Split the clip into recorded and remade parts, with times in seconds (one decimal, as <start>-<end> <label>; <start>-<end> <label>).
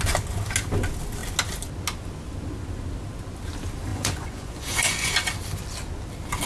0.0-3.9 recorded; 3.9-5.1 remade; 5.1-6.5 recorded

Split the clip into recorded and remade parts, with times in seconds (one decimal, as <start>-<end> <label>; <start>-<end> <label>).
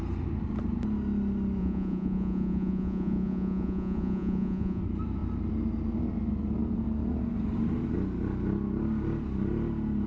0.0-1.6 recorded; 1.6-4.8 remade; 4.8-10.1 recorded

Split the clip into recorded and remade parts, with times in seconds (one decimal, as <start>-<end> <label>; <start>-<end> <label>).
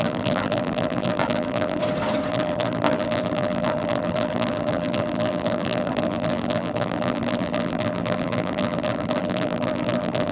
0.0-1.8 remade; 1.8-2.3 recorded; 2.3-10.3 remade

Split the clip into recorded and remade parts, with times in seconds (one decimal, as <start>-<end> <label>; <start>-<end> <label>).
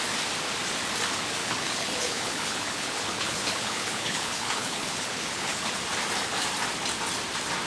0.0-1.4 recorded; 1.4-5.7 remade; 5.7-7.7 recorded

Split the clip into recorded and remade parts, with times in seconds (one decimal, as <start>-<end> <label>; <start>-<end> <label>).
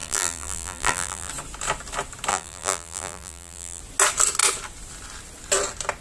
0.0-1.3 remade; 1.3-2.3 recorded; 2.3-3.8 remade; 3.8-6.0 recorded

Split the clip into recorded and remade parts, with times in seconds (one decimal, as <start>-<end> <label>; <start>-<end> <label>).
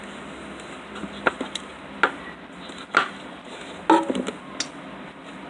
0.0-5.5 recorded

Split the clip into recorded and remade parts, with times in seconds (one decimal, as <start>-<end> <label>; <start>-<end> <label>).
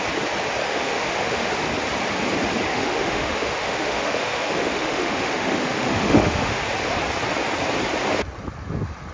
0.0-0.6 recorded; 0.6-1.5 remade; 1.5-2.7 recorded; 2.7-6.6 remade; 6.6-9.1 recorded